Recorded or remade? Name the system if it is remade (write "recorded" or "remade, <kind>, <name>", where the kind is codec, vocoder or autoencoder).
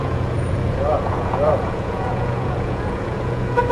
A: remade, vocoder, Vocos